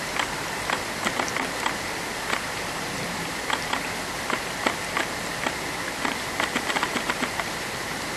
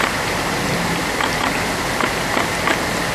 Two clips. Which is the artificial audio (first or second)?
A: first